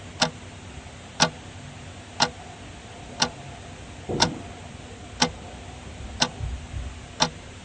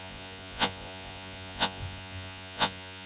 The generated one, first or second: second